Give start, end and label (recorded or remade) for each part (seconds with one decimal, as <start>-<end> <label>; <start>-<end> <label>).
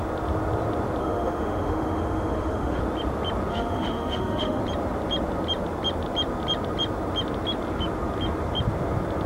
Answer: 0.0-1.0 recorded; 1.0-2.8 remade; 2.8-3.5 recorded; 3.5-4.6 remade; 4.6-9.3 recorded